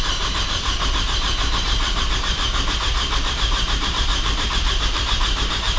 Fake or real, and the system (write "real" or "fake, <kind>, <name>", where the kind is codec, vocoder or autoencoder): fake, vocoder, BigVGAN v2